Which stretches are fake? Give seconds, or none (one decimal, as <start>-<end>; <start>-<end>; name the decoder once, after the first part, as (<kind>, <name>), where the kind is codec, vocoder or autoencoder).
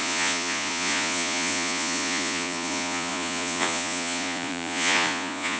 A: 0.0-5.6 (vocoder, Vocos)